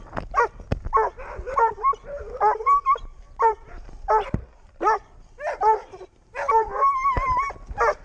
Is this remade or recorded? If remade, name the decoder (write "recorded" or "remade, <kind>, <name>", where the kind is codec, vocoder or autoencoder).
recorded